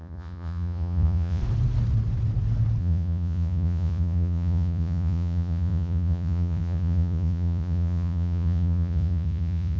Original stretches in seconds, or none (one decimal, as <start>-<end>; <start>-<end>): 1.4-2.8